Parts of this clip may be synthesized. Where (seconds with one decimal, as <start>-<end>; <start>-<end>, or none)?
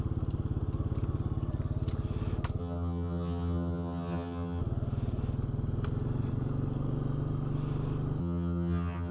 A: 2.6-4.6; 8.2-9.1